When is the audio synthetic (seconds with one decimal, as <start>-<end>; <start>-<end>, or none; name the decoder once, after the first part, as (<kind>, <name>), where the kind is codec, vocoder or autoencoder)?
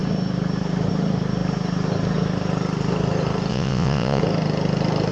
3.5-4.2 (vocoder, WaveNeXt)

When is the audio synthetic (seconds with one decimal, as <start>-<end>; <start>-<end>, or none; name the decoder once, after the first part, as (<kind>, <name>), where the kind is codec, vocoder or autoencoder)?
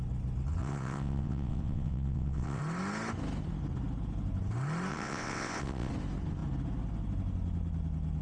0.6-2.6 (vocoder, WaveNeXt); 4.9-5.9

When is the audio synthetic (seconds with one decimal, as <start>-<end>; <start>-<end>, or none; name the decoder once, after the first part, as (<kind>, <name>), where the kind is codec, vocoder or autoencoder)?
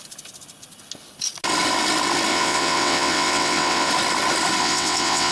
2.3-3.9 (vocoder, WaveNeXt); 4.6-5.3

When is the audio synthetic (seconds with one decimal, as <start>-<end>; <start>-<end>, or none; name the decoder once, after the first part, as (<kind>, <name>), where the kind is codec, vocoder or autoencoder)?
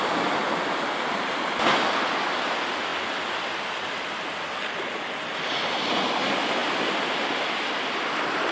none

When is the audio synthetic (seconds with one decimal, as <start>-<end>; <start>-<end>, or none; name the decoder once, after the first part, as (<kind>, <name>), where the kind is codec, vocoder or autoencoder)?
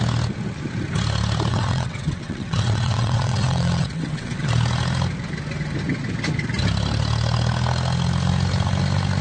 1.5-4.5 (vocoder, WaveNeXt)